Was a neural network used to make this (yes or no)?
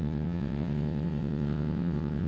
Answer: yes